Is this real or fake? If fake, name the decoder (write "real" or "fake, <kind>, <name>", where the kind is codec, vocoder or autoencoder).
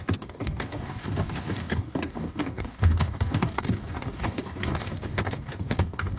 fake, codec, DAC